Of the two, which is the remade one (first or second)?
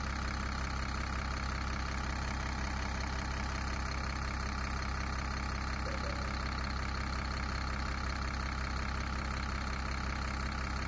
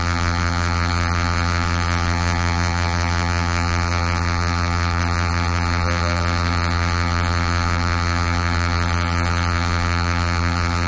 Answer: second